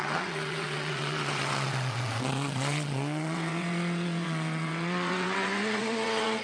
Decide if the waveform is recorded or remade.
remade